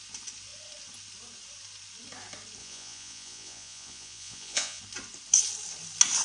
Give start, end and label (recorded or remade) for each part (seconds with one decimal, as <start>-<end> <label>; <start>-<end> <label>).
0.0-2.6 recorded; 2.6-4.8 remade; 4.8-6.2 recorded